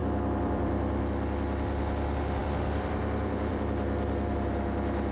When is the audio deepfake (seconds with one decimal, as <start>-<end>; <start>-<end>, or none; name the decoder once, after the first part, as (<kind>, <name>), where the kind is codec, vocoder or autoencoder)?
0.0-1.0 (vocoder, BigVGAN v2); 2.4-4.5